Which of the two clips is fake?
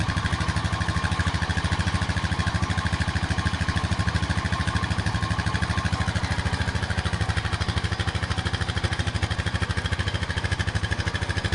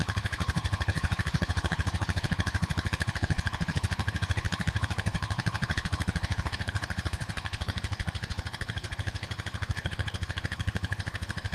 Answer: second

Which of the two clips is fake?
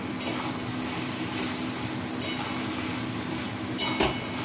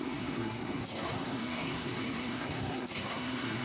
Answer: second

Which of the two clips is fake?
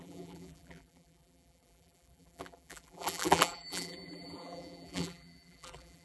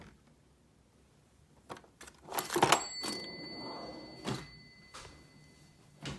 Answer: first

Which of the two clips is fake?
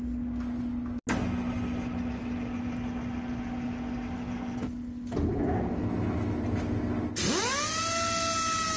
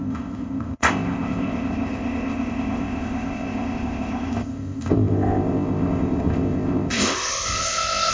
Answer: second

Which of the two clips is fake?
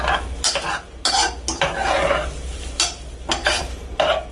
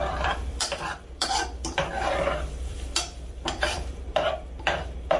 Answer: second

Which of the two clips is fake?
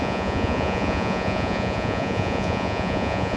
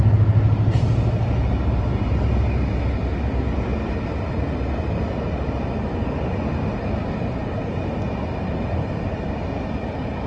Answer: first